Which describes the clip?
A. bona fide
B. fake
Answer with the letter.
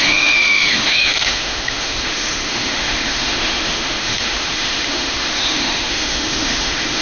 B